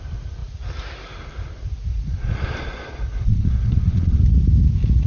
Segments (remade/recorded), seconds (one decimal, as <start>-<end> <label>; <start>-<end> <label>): 0.0-1.9 recorded; 1.9-4.2 remade; 4.2-5.1 recorded